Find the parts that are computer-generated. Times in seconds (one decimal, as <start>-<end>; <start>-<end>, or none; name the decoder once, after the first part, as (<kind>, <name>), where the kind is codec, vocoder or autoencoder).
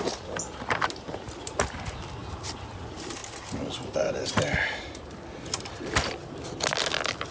none